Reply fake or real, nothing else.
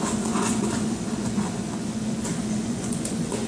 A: fake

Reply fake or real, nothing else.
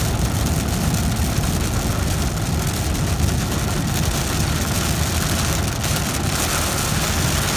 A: real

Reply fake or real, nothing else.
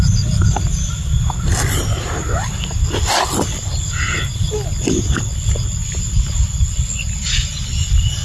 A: real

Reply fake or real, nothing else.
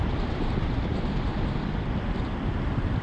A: fake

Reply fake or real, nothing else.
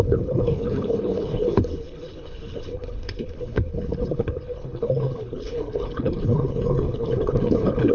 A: fake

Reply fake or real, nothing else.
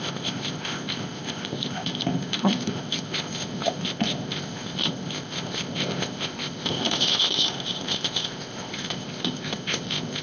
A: fake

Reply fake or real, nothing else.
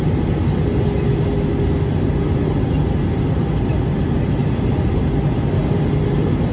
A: real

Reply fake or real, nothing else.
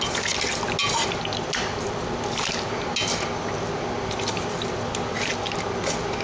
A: real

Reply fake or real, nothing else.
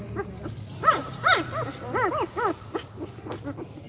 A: real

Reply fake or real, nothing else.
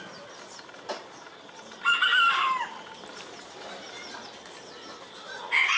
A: real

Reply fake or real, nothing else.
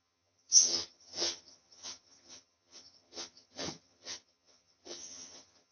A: fake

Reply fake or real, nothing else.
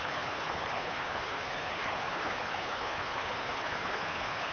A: fake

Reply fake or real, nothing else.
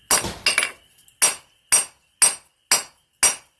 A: real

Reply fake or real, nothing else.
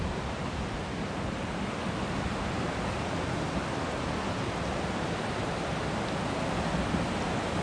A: real